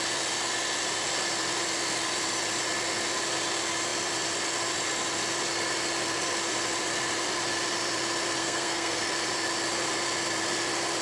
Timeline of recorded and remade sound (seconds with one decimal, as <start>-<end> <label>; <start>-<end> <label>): 0.0-8.4 recorded; 8.4-9.0 remade; 9.0-11.0 recorded